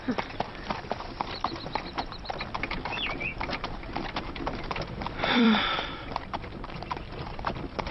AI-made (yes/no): yes